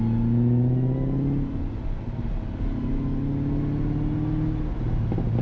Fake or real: real